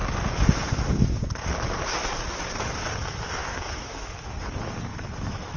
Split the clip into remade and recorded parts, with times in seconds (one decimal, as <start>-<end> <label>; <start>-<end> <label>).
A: 0.0-3.4 recorded; 3.4-4.4 remade; 4.4-4.9 recorded; 4.9-5.6 remade